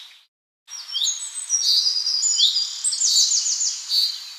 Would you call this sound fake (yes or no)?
no